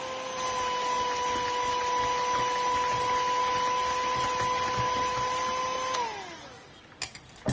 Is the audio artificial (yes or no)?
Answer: no